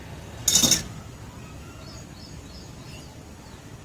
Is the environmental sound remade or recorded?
recorded